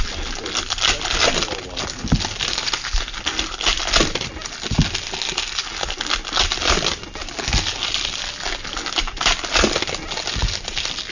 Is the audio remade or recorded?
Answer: recorded